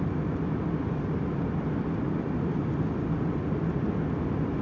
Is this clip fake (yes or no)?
no